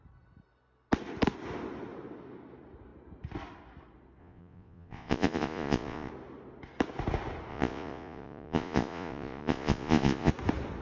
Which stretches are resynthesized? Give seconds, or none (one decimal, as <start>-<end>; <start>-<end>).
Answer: 4.2-6.1; 7.5-10.3

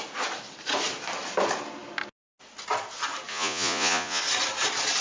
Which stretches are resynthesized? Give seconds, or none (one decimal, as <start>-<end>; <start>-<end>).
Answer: 3.3-4.2

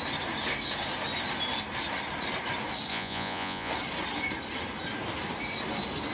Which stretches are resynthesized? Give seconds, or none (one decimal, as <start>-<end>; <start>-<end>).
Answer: 2.9-3.7

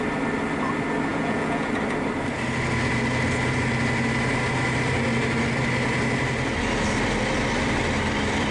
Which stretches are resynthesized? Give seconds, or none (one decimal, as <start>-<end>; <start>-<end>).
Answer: 1.1-1.7

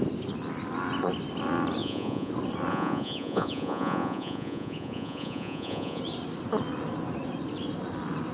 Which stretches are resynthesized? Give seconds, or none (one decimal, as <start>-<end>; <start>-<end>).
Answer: 1.8-2.3; 2.7-6.0

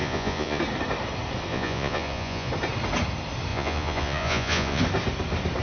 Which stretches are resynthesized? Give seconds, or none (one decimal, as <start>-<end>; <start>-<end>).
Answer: 0.0-0.6; 1.5-2.5; 3.5-4.8

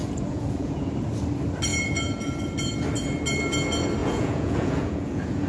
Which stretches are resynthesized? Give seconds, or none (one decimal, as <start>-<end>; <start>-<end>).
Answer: 0.0-0.9; 1.7-2.3; 4.0-5.5

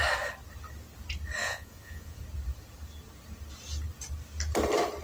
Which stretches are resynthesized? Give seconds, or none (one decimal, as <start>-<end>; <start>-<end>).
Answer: 1.4-2.2